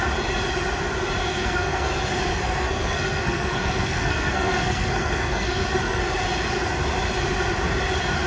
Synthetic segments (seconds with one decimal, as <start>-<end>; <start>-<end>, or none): 1.3-1.9; 2.3-6.0